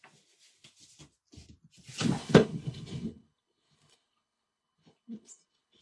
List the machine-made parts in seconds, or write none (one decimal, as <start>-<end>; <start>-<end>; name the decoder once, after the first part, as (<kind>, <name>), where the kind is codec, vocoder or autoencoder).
2.2-5.8 (codec, HILCodec)